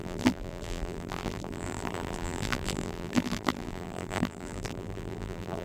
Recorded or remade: remade